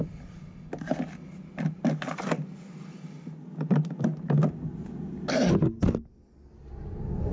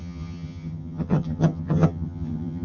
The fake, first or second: second